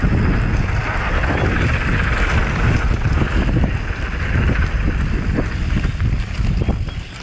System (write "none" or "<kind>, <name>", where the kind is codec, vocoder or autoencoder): none